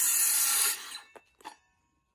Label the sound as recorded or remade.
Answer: recorded